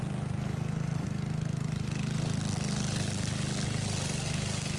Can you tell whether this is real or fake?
real